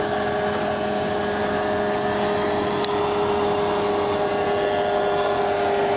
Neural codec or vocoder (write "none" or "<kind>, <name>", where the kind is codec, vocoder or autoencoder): none